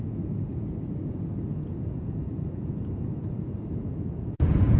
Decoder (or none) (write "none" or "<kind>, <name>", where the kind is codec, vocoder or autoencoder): vocoder, Vocos